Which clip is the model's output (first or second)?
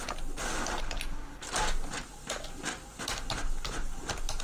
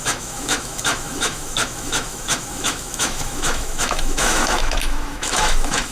second